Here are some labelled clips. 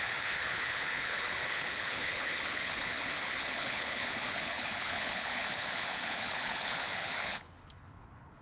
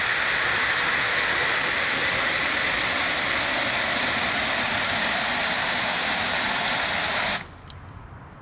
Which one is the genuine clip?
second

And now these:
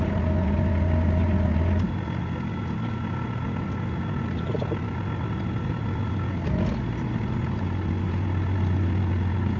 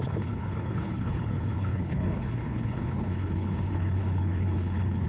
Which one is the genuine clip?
first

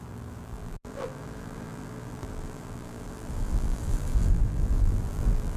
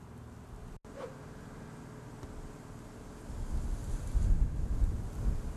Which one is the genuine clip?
second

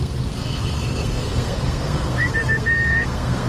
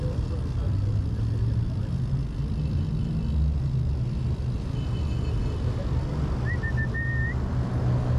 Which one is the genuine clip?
second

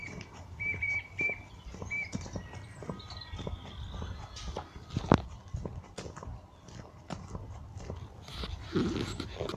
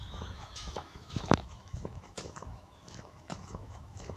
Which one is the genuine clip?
first